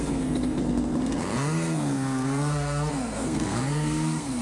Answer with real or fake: fake